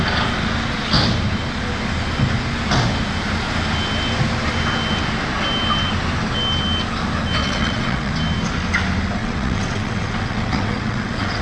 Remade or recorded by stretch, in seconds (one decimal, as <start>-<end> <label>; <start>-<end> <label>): 0.0-7.4 recorded; 7.4-8.1 remade; 8.1-9.2 recorded; 9.2-11.4 remade